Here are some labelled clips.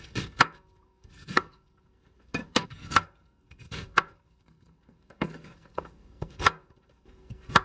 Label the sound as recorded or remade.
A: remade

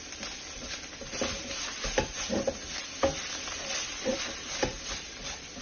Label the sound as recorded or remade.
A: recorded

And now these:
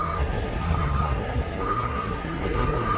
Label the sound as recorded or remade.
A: remade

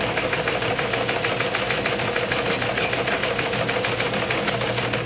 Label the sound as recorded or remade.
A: recorded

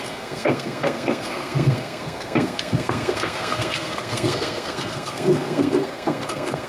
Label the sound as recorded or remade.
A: remade